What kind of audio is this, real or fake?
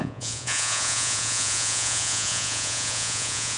fake